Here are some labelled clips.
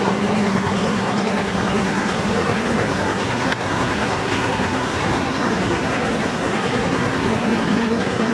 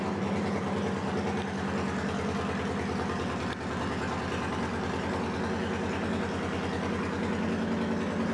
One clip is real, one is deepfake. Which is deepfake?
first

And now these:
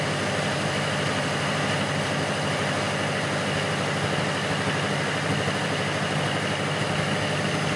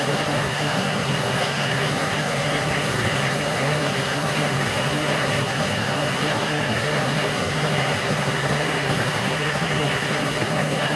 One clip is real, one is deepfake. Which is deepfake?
second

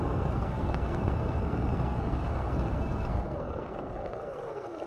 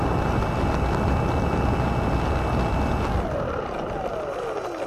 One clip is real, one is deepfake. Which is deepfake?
first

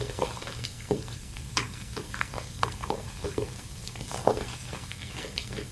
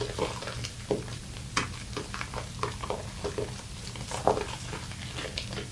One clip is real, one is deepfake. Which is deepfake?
first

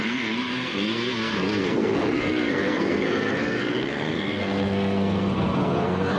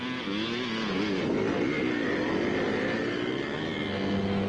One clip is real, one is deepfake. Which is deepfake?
first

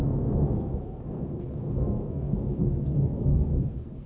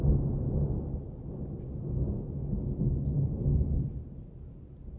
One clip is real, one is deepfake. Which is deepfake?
first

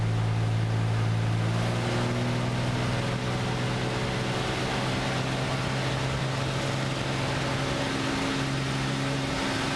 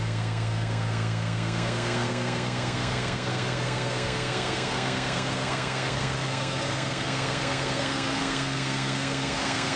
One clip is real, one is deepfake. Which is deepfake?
second